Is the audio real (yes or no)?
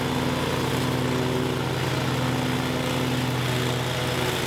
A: yes